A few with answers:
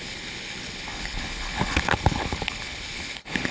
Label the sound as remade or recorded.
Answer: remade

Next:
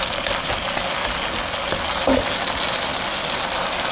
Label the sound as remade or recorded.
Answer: recorded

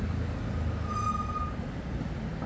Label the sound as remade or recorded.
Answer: recorded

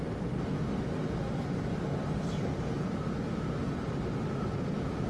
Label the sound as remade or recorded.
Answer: recorded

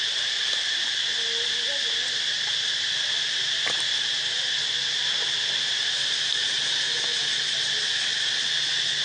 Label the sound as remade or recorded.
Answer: recorded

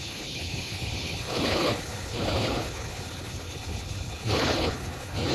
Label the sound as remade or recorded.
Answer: remade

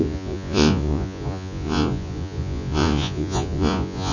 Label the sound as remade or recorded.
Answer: remade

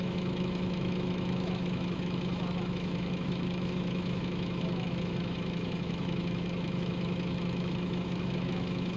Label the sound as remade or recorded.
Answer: remade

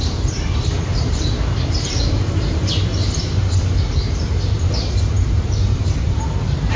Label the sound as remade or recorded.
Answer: remade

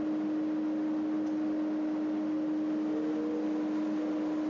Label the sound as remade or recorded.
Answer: recorded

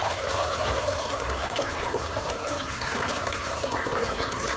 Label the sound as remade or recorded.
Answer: remade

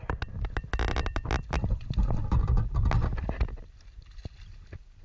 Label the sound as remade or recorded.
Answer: recorded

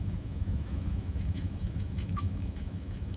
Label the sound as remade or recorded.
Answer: remade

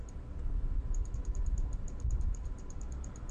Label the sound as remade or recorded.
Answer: remade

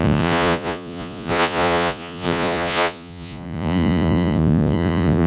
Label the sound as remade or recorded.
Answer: remade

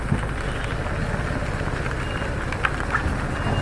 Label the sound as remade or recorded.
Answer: recorded